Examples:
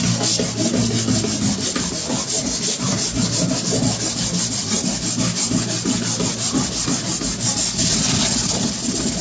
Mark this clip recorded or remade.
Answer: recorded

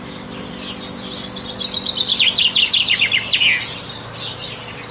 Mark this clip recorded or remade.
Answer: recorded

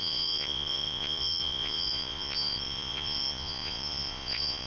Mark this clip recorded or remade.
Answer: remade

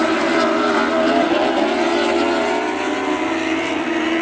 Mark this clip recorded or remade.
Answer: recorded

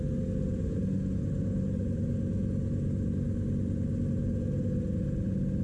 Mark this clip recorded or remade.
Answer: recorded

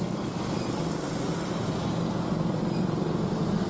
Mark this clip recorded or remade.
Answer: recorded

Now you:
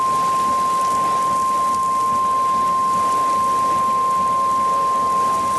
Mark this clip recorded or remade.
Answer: recorded